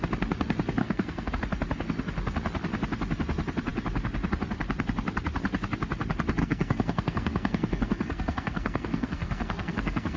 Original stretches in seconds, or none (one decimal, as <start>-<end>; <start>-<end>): 0.0-0.8; 1.3-6.4